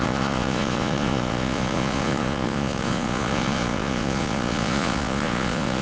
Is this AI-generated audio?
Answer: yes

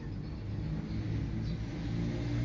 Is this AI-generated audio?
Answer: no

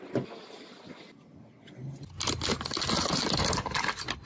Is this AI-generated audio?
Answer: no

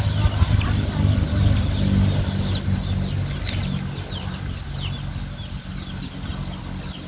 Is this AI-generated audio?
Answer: no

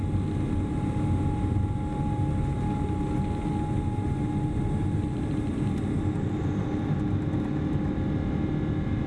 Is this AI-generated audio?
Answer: no